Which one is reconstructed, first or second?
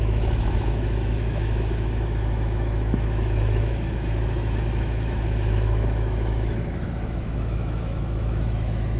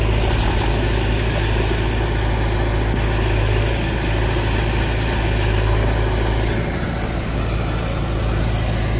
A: first